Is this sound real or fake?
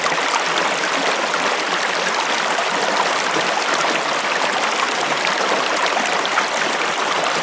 real